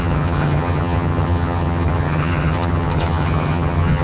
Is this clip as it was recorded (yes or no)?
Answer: no